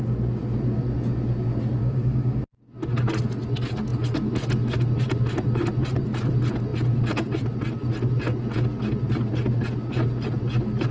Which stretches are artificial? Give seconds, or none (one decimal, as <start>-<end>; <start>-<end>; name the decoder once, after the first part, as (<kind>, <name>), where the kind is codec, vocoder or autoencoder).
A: 1.8-2.4 (codec, DAC)

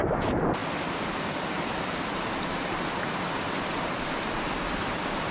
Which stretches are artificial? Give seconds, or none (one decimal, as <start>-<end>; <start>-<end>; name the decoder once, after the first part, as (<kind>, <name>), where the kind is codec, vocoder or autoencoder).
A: none

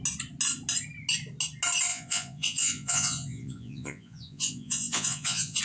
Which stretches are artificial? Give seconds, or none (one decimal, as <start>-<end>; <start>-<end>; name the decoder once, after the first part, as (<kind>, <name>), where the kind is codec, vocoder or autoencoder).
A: 1.9-5.6 (vocoder, Vocos)

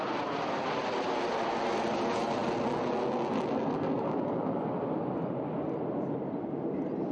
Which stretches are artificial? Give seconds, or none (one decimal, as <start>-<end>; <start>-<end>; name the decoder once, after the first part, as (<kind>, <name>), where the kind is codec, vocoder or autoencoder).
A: none

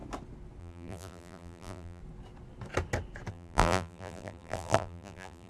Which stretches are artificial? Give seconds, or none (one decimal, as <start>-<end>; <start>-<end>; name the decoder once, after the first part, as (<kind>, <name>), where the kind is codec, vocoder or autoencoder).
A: 0.6-2.0 (vocoder, BigVGAN v2); 3.3-5.5